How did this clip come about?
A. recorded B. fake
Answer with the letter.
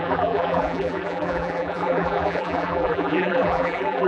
B